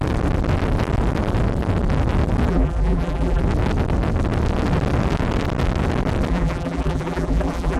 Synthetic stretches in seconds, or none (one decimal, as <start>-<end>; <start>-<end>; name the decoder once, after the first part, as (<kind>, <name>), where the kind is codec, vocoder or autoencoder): 2.5-3.4 (vocoder, BigVGAN v2); 6.3-7.8